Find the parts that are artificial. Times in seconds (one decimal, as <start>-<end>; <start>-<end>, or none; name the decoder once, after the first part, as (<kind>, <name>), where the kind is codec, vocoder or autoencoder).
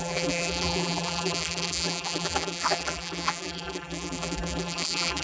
0.0-5.2 (vocoder, BigVGAN v2)